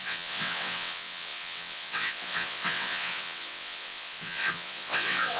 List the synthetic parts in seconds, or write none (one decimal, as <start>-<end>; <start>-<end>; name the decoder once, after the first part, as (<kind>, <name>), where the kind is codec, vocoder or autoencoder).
0.0-5.4 (vocoder, WaveNeXt)